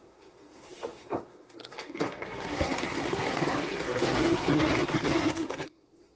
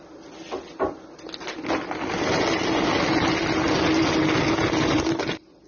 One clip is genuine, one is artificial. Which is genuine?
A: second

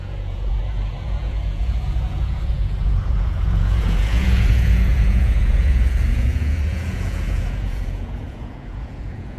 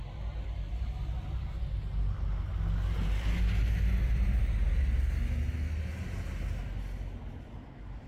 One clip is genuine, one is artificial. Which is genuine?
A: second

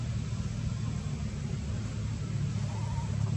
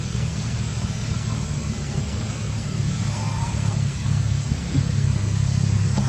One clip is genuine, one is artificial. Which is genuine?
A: first